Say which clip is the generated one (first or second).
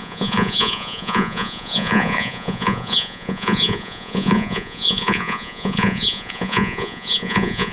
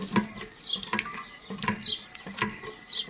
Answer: first